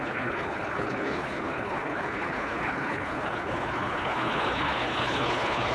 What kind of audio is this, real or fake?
fake